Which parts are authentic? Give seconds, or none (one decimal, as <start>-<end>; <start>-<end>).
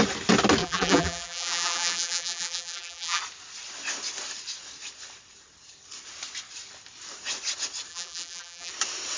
0.0-0.6; 3.2-7.9; 8.7-9.2